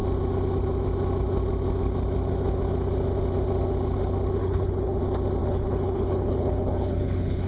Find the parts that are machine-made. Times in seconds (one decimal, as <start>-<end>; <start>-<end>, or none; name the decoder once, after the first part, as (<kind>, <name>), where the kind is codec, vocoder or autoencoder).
4.4-5.0 (codec, HILCodec); 5.4-7.5